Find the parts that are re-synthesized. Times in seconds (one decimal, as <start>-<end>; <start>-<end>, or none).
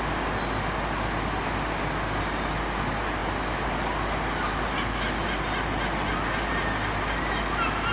none